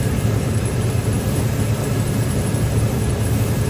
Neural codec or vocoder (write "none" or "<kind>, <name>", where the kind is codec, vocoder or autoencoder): vocoder, BigVGAN v2